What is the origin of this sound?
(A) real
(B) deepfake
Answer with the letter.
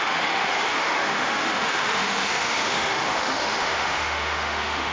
B